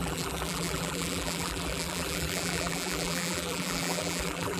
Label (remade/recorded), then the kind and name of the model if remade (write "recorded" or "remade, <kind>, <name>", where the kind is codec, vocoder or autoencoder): remade, vocoder, BigVGAN v2